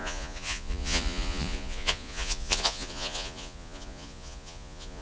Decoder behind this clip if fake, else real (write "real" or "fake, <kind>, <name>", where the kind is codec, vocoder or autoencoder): fake, vocoder, Vocos